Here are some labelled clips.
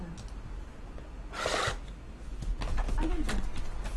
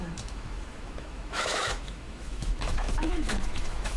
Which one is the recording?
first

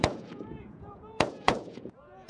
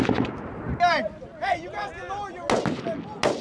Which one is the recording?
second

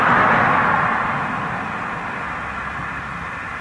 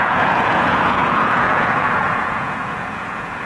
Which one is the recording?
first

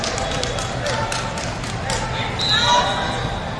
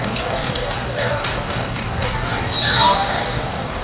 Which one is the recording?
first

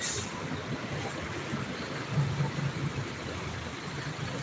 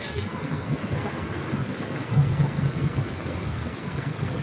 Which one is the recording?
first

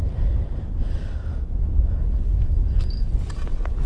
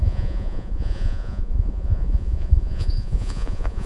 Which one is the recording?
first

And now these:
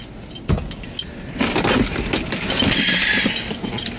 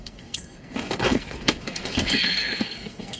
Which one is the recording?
first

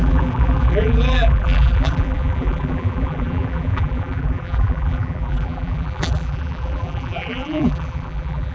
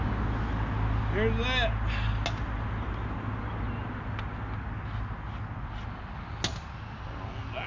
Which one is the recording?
second